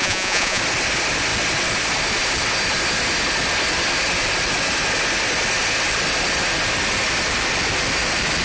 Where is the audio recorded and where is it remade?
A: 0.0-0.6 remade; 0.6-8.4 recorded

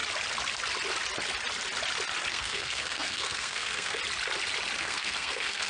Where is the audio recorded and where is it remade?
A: 0.0-2.3 recorded; 2.3-4.0 remade; 4.0-4.8 recorded; 4.8-5.7 remade

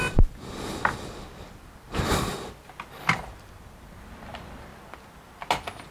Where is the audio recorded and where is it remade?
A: 0.0-2.3 remade; 2.3-3.2 recorded; 3.2-4.7 remade; 4.7-5.9 recorded

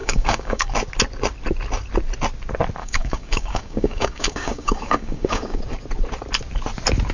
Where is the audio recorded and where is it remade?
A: 0.0-0.7 remade; 0.7-2.8 recorded; 2.8-5.6 remade; 5.6-7.1 recorded

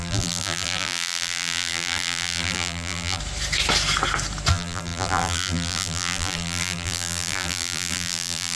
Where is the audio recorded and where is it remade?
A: 0.0-3.2 remade; 3.2-4.5 recorded; 4.5-8.6 remade

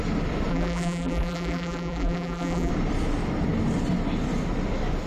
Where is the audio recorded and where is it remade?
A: 0.0-0.5 recorded; 0.5-2.7 remade; 2.7-5.1 recorded

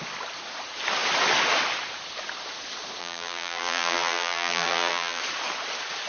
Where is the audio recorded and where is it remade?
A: 0.0-3.0 recorded; 3.0-5.2 remade; 5.2-6.1 recorded

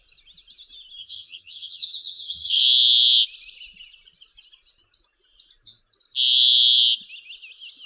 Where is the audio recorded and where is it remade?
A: 0.0-1.0 recorded; 1.0-2.6 remade; 2.6-7.9 recorded